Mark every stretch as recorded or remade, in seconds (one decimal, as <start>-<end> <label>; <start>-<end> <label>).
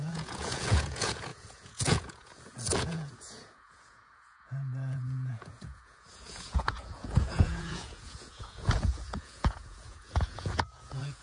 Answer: 0.0-11.2 remade